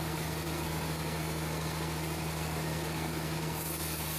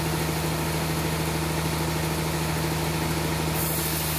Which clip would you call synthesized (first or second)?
first